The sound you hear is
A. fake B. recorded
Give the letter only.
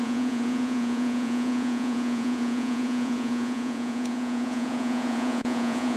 A